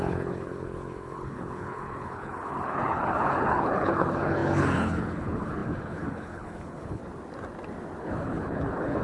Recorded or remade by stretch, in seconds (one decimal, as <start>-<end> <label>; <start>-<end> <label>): 0.0-7.0 remade; 7.0-8.0 recorded; 8.0-9.0 remade